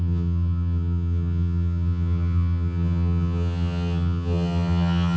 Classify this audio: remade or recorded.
remade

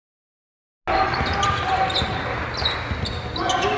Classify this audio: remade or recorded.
recorded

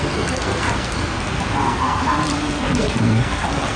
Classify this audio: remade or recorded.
remade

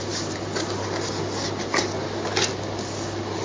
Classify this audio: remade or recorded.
recorded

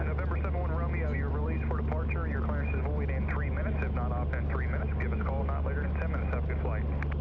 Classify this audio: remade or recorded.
recorded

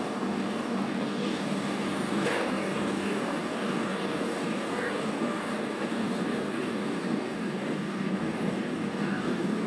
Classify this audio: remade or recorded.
remade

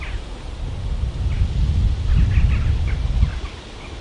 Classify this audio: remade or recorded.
recorded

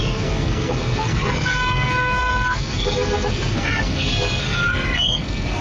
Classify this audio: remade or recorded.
remade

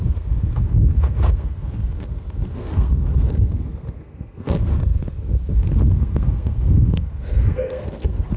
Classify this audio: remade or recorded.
remade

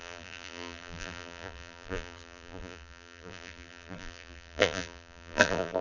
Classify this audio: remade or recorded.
remade